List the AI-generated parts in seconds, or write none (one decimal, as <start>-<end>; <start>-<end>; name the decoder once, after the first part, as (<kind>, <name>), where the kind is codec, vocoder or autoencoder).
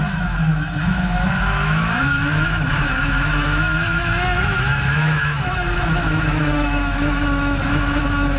0.0-8.4 (autoencoder, DAC-VAE)